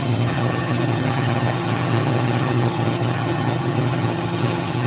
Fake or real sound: fake